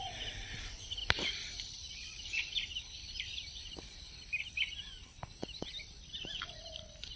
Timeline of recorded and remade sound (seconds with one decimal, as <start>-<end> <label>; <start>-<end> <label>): 0.0-1.0 recorded; 1.0-5.3 remade; 5.3-7.2 recorded